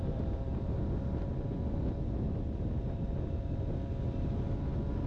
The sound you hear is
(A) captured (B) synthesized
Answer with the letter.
A